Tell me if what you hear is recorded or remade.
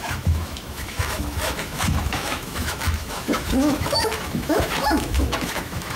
remade